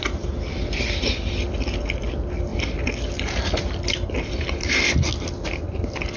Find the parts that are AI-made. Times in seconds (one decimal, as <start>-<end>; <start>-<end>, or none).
none